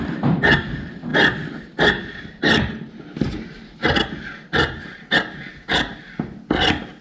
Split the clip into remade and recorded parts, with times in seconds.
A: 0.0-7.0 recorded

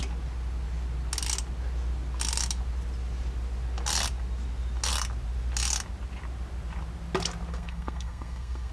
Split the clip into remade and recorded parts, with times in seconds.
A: 0.0-7.5 recorded; 7.5-8.7 remade

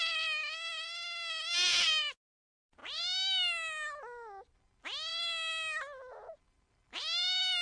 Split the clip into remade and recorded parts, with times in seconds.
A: 0.0-7.6 recorded

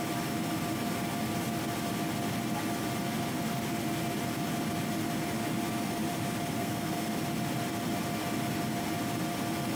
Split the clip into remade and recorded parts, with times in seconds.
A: 0.0-6.6 recorded; 6.6-7.1 remade; 7.1-9.8 recorded

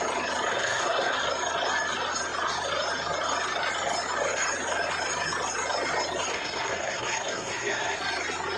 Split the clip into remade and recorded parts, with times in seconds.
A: 0.0-0.5 recorded; 0.5-1.2 remade; 1.2-6.3 recorded; 6.3-8.0 remade; 8.0-8.6 recorded

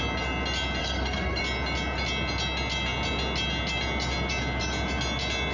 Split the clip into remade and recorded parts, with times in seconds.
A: 0.0-0.8 recorded; 0.8-1.4 remade; 1.4-5.5 recorded